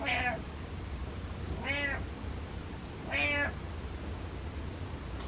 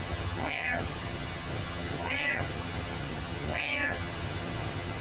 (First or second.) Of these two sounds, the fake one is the second